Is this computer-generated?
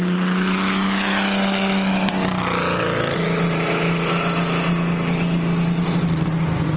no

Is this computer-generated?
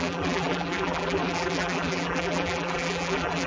yes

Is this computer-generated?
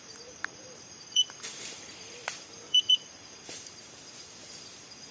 yes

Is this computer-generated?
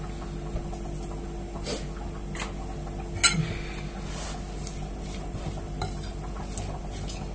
no